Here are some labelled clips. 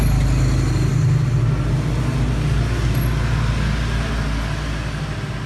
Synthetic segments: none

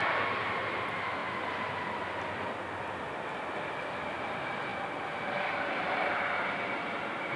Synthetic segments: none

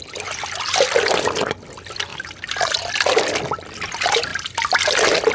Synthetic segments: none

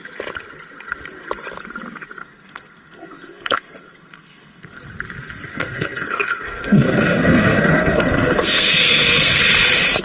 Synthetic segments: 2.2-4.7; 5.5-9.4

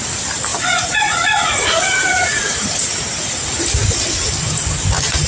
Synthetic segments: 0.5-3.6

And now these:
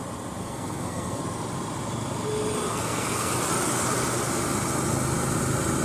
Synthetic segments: 0.4-1.2; 2.7-3.3

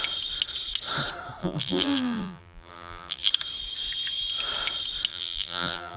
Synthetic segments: 1.4-3.3; 5.1-6.0

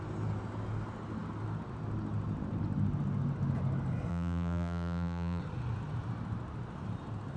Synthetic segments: 4.1-5.4